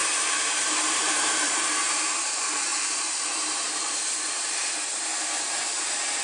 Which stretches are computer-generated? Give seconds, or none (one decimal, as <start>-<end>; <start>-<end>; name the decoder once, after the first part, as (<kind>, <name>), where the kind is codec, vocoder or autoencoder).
0.0-2.7 (vocoder, BigVGAN v2); 3.4-5.1; 5.8-6.2